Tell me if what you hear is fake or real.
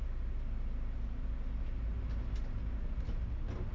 real